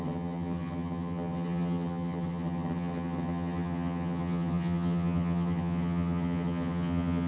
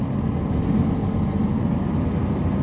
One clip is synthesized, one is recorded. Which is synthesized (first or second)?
first